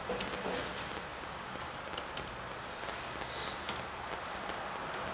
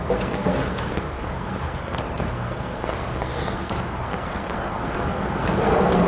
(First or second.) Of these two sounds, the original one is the first